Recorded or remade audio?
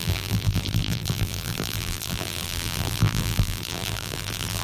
remade